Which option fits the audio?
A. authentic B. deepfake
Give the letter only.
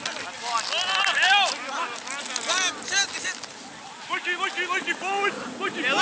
A